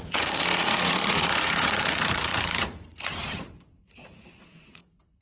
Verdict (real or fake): fake